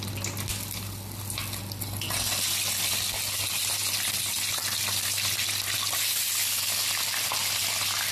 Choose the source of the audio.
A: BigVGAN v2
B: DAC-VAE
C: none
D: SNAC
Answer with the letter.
C